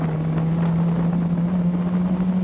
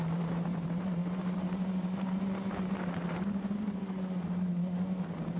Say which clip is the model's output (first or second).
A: second